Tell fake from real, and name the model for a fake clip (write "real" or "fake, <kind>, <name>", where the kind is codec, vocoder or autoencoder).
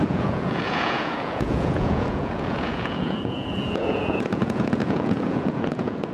fake, vocoder, Vocos